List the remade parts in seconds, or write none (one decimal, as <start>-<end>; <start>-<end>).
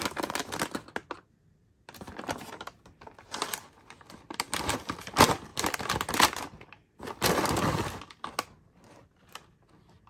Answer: none